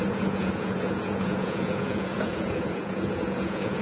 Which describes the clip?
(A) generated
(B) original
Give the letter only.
A